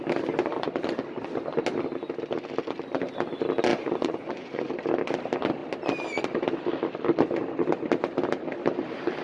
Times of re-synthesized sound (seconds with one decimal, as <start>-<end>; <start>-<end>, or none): 3.7-4.7